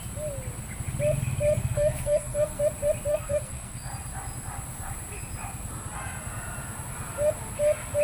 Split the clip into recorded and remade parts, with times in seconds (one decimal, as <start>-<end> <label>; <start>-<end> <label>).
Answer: 0.0-1.6 recorded; 1.6-2.6 remade; 2.6-3.1 recorded; 3.1-3.9 remade; 3.9-8.0 recorded